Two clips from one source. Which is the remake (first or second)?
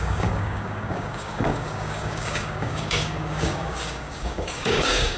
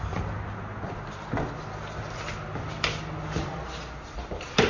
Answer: first